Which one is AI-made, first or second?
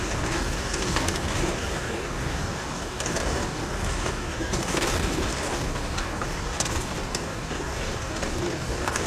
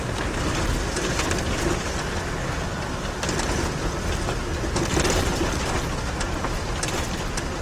first